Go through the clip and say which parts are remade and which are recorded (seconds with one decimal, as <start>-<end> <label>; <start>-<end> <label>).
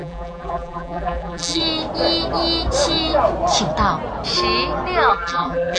0.0-1.6 remade; 1.6-5.1 recorded; 5.1-5.8 remade